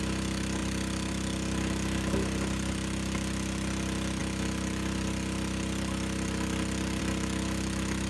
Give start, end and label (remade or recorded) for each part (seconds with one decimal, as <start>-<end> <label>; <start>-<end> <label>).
0.0-8.1 recorded

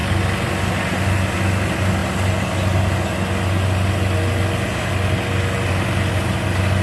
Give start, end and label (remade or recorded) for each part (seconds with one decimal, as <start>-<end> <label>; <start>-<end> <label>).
0.0-6.8 recorded

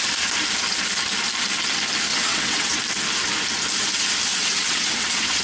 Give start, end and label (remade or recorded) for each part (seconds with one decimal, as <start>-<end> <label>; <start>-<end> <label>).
0.0-2.1 recorded; 2.1-2.8 remade; 2.8-4.3 recorded; 4.3-5.4 remade